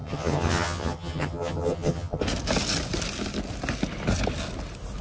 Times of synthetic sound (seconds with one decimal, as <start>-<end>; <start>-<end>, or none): 0.0-2.2